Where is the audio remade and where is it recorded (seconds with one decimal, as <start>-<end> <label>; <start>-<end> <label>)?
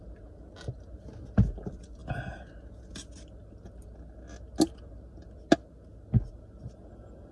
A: 0.0-7.3 recorded